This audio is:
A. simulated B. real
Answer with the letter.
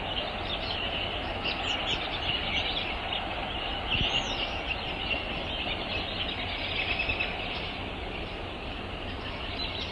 B